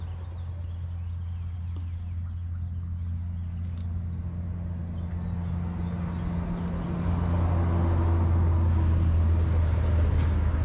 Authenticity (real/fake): real